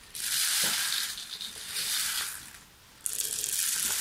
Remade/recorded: recorded